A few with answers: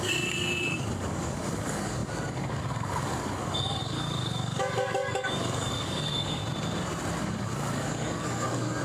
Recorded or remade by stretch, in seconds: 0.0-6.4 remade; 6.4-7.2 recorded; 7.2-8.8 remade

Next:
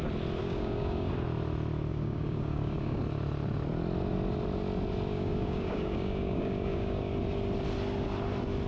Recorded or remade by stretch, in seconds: 0.0-0.4 recorded; 0.4-1.1 remade; 1.1-1.9 recorded; 1.9-3.0 remade; 3.0-5.1 recorded; 5.1-7.1 remade; 7.1-8.7 recorded

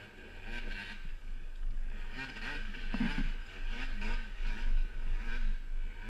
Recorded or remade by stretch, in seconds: 0.0-1.1 recorded; 1.1-2.8 remade; 2.8-3.4 recorded; 3.4-5.3 remade; 5.3-6.1 recorded

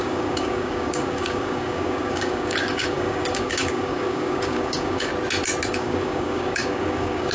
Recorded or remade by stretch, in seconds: 0.0-5.1 remade; 5.1-5.7 recorded; 5.7-7.3 remade